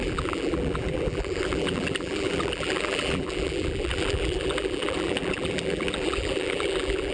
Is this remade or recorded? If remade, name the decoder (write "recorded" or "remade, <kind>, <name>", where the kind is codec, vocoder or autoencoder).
remade, vocoder, BigVGAN v2